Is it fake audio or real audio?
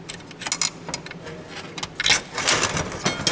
real